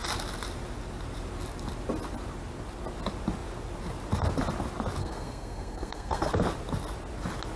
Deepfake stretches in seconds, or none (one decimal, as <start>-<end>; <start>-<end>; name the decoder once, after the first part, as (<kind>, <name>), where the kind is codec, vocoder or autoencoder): 5.0-6.3 (codec, SNAC)